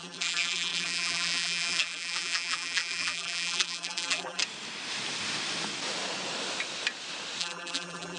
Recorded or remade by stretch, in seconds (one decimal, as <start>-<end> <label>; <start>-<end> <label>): 0.0-4.4 remade; 4.4-7.4 recorded; 7.4-8.2 remade